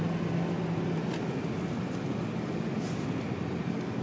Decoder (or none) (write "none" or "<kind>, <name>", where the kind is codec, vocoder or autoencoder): none